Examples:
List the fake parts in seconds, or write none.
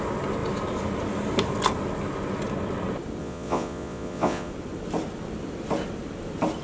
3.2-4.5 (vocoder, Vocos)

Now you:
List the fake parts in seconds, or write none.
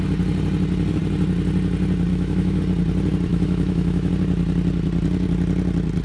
2.1-2.6 (autoencoder, DAC-VAE); 3.3-4.1